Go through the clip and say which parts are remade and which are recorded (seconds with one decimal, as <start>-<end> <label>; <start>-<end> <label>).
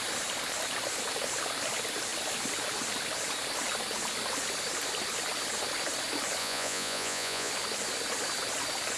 0.0-6.4 recorded; 6.4-7.5 remade; 7.5-9.0 recorded